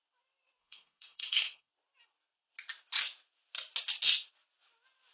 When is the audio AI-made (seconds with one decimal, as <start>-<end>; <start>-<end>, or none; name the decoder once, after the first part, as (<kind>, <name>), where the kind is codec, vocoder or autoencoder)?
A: 0.6-1.7 (codec, SNAC)